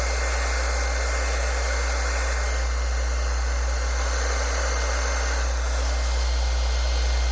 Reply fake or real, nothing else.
real